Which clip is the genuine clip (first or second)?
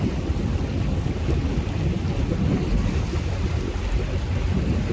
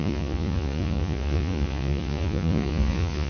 first